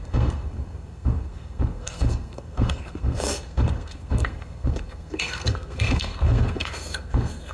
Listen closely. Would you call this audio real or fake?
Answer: fake